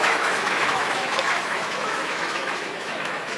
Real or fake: fake